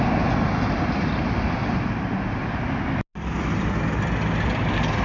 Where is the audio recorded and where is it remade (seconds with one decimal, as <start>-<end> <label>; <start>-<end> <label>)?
0.0-5.0 recorded